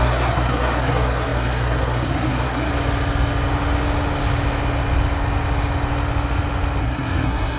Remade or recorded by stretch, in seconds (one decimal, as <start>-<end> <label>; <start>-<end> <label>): 0.0-2.7 remade; 2.7-6.8 recorded; 6.8-7.6 remade